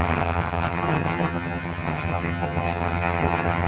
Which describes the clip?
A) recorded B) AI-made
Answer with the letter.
B